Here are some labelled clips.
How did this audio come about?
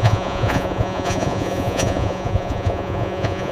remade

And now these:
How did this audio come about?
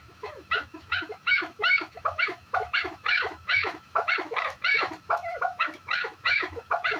remade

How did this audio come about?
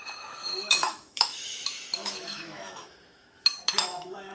remade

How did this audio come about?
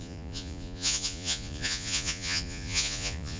remade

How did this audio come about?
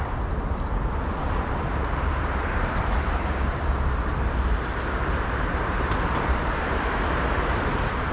remade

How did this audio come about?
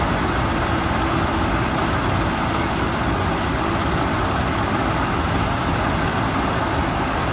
recorded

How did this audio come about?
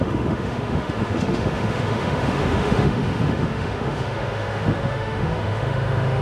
remade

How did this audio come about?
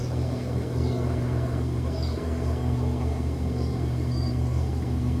remade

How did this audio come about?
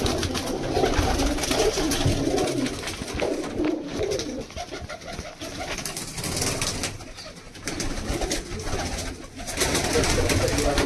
recorded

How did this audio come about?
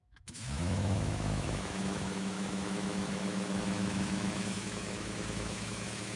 remade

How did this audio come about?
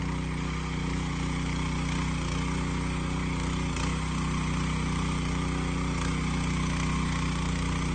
recorded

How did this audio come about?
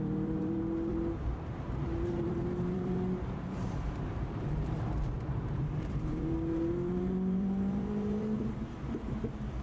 remade